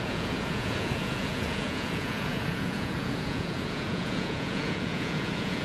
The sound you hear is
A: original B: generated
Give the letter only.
B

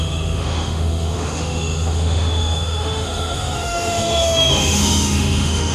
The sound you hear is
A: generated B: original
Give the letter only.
A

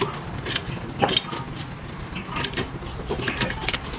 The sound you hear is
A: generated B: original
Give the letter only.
A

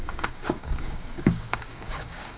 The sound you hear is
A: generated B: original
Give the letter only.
A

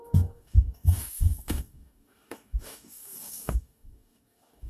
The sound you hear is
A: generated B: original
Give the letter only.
A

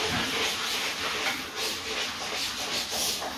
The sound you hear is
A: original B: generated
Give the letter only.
A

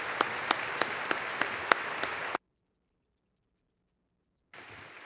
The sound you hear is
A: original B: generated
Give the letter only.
A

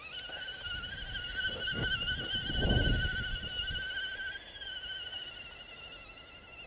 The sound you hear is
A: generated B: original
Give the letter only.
B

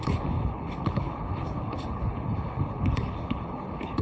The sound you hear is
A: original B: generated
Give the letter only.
B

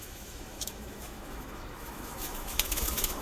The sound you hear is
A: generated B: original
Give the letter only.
A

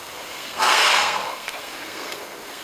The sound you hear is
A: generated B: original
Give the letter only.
A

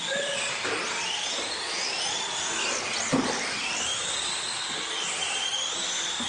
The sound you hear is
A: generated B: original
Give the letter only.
B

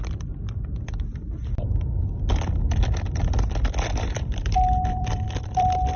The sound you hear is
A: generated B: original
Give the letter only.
A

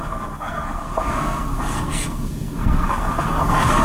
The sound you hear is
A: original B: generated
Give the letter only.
B